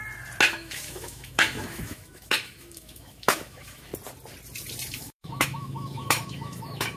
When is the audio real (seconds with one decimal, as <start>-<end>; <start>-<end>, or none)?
0.0-0.5; 3.9-4.9